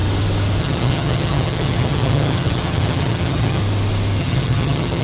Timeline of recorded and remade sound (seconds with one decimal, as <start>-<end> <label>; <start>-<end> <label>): 0.0-0.6 recorded; 0.6-3.6 remade; 3.6-4.2 recorded; 4.2-5.0 remade